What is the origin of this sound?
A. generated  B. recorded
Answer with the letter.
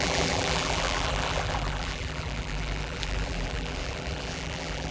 A